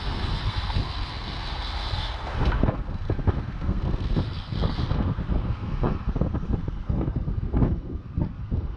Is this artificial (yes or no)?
yes